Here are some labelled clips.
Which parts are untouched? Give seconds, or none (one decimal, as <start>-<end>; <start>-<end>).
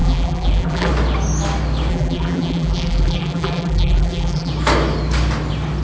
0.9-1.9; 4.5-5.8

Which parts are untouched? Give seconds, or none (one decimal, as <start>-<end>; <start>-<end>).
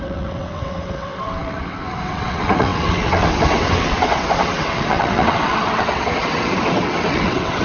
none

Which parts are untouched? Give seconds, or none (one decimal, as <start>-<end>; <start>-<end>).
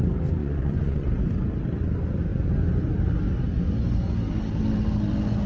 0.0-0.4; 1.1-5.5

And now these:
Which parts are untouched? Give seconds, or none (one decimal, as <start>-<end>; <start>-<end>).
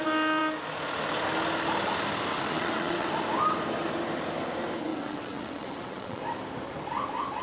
0.0-2.3; 3.1-4.9; 6.2-7.4